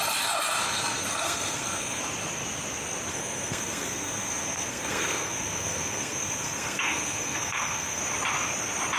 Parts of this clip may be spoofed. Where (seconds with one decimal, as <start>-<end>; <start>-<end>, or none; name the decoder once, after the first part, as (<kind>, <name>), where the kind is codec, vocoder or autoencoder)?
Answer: 1.1-2.0 (codec, SNAC); 3.1-8.0